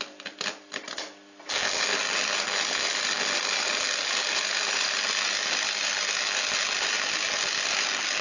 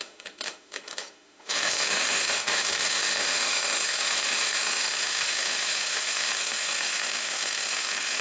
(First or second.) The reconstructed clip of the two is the second